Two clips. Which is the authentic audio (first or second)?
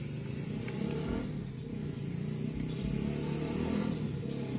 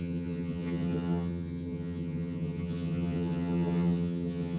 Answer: first